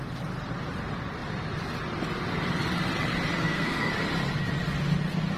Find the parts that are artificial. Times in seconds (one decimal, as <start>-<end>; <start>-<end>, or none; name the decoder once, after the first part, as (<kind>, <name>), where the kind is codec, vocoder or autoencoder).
3.4-3.9 (codec, SNAC)